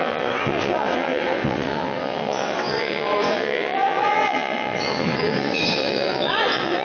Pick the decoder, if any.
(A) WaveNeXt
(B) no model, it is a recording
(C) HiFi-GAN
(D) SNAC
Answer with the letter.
A